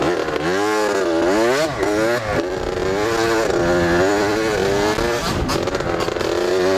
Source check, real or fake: real